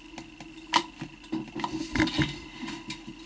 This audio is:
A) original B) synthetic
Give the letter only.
A